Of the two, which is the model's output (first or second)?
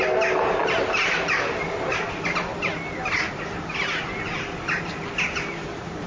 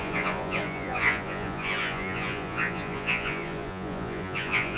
second